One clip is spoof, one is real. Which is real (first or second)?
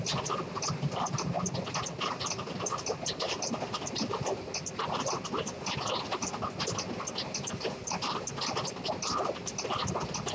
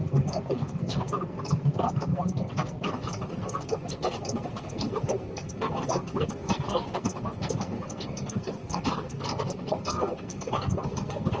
first